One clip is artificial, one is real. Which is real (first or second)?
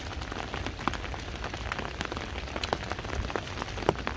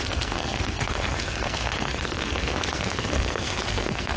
first